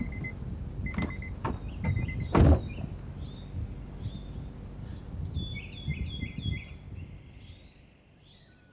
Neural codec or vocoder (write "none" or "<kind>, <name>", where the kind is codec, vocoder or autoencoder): none